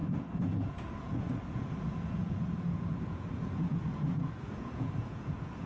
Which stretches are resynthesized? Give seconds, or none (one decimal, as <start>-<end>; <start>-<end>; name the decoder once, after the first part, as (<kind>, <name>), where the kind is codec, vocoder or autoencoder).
0.0-5.7 (vocoder, Vocos)